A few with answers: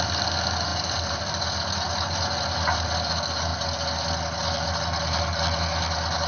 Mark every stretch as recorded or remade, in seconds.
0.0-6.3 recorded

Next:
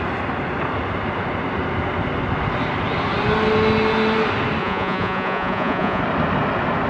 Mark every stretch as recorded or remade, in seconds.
0.0-4.6 recorded; 4.6-6.0 remade; 6.0-6.9 recorded